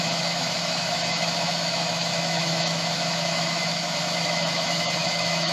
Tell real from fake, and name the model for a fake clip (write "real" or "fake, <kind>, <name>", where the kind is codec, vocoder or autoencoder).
fake, autoencoder, DAC-VAE